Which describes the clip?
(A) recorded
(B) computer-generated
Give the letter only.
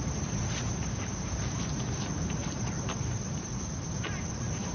B